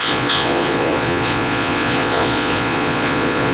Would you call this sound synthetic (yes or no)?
yes